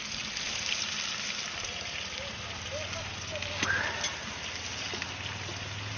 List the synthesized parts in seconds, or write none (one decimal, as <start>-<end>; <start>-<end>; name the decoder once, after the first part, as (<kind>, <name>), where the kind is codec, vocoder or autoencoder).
none

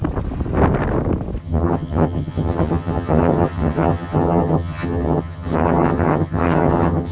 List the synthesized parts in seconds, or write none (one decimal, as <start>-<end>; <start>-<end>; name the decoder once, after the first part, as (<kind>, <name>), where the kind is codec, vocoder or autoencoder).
1.4-7.1 (vocoder, HiFi-GAN)

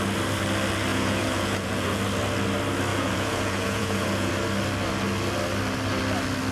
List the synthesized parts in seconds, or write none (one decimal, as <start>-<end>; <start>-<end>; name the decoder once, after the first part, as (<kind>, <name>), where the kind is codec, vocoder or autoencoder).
0.9-2.0 (vocoder, Vocos); 2.9-4.3

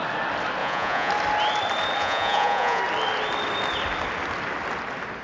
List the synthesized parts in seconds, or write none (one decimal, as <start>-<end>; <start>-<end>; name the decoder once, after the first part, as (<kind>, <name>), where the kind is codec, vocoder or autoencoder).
0.6-1.1 (vocoder, Vocos); 2.0-2.8

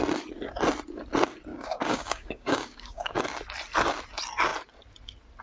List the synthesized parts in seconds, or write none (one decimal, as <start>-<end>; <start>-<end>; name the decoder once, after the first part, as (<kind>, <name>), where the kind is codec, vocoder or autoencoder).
1.5-3.2 (codec, DAC)

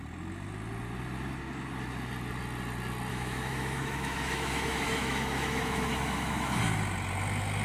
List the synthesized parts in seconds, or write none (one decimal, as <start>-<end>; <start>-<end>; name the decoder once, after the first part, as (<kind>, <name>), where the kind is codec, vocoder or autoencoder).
3.1-6.6 (autoencoder, DAC-VAE)